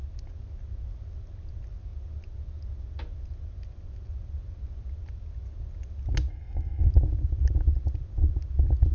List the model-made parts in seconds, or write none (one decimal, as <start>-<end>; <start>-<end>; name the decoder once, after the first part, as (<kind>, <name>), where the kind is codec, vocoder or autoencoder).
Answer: 6.3-6.9 (codec, SNAC)